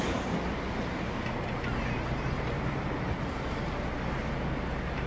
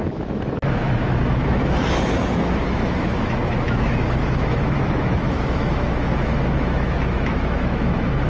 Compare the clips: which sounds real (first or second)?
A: first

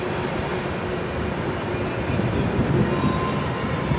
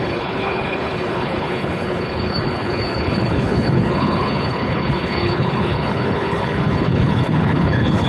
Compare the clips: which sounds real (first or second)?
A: first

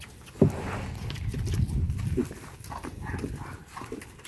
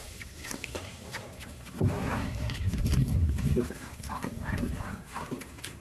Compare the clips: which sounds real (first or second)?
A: first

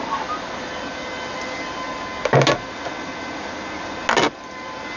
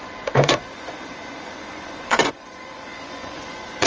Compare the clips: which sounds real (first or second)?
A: first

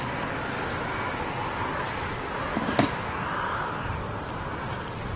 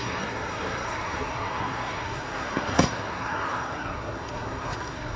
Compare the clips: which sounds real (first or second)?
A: first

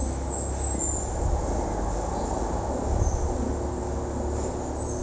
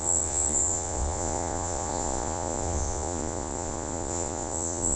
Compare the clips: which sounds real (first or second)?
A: first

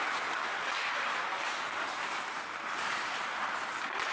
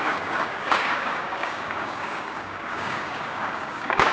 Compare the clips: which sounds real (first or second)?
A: first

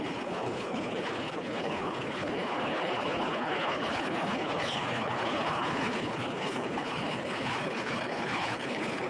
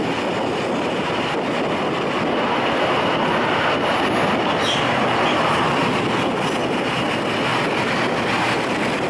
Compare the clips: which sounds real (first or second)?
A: second